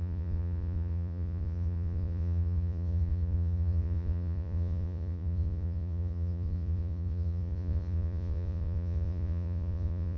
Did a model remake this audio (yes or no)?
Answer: yes